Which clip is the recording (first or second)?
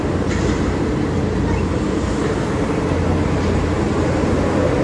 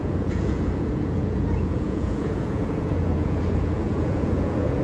first